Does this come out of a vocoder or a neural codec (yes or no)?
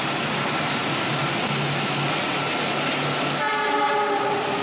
no